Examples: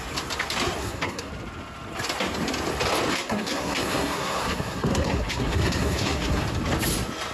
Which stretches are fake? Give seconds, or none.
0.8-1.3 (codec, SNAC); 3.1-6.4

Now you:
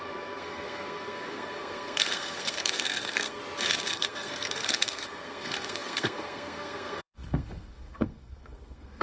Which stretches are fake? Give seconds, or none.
0.0-3.4 (codec, SNAC); 3.9-9.0

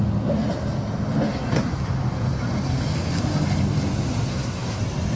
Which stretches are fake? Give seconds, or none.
4.3-4.8 (codec, SNAC)

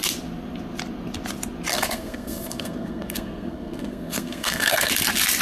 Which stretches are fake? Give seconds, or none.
1.7-4.9 (codec, SNAC)

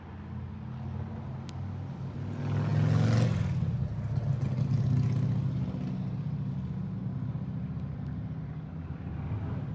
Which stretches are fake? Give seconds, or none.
none

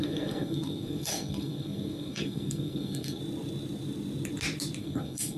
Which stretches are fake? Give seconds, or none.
0.0-3.2 (codec, SNAC); 4.8-5.4

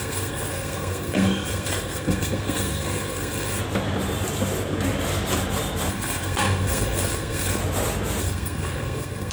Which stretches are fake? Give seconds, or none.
0.0-3.6 (codec, SNAC); 5.9-7.6; 8.2-9.3

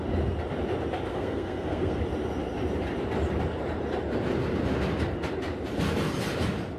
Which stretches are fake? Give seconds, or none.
1.1-2.0 (codec, SNAC)